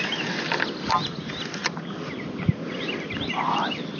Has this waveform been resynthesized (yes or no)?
no